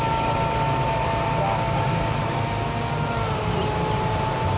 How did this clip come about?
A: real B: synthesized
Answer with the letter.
A